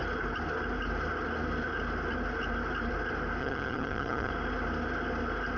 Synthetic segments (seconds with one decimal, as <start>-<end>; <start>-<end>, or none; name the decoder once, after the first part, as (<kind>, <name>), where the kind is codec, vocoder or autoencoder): 3.4-4.3 (vocoder, HiFi-GAN)